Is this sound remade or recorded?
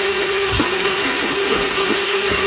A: remade